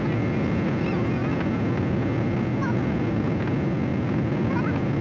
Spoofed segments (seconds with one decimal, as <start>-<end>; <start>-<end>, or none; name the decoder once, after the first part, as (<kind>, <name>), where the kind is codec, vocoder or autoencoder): none